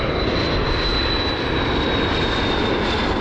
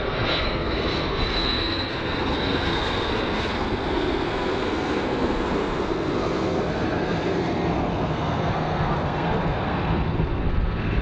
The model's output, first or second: second